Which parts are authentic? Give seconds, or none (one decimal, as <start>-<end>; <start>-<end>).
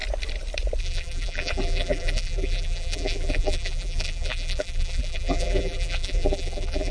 0.0-0.8